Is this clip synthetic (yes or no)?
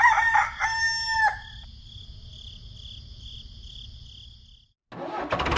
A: no